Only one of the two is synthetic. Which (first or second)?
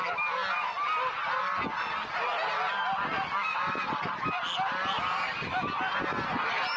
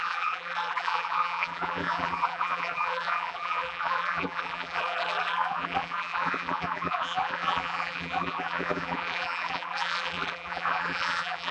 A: second